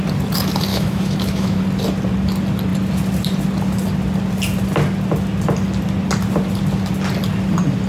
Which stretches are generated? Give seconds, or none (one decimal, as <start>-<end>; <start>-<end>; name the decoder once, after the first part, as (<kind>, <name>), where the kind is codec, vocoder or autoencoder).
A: 0.7-1.6 (autoencoder, DAC-VAE)

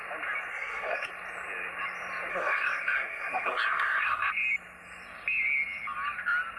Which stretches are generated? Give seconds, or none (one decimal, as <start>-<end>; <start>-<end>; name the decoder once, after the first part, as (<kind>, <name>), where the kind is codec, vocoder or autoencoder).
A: 0.5-1.1 (codec, SNAC); 2.3-4.3

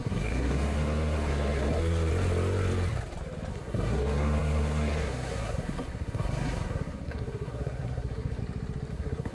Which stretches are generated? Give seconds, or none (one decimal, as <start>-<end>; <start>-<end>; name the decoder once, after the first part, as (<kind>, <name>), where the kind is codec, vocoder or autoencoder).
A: 0.0-2.1 (codec, SNAC); 3.5-8.4; 8.9-9.3

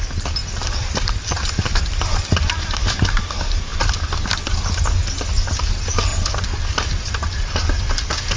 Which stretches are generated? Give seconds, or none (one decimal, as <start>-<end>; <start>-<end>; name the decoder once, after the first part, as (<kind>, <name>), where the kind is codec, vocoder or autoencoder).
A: 0.4-3.0 (vocoder, BigVGAN v2); 3.7-4.3; 6.1-7.8

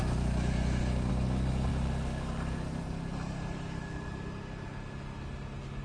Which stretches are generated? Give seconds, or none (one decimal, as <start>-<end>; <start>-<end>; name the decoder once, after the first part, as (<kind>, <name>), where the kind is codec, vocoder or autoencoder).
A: 0.0-1.1 (autoencoder, DAC-VAE)